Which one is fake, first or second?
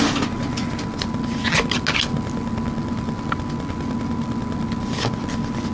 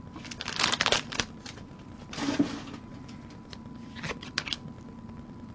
second